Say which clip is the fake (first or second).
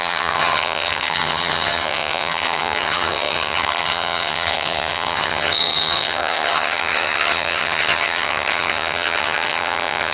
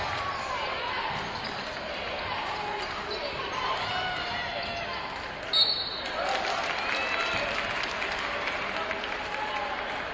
first